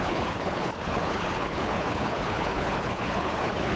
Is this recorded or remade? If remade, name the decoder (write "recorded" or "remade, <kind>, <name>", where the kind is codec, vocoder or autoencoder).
remade, codec, HILCodec